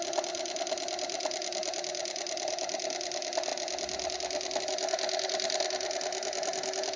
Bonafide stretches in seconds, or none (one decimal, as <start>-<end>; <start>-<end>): 0.0-7.0